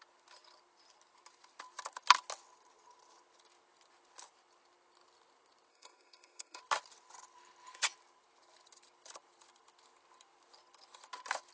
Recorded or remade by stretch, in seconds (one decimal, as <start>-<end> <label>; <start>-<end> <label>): 0.0-5.7 recorded; 5.7-6.6 remade; 6.6-11.5 recorded